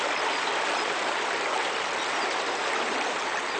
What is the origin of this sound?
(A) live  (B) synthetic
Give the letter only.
A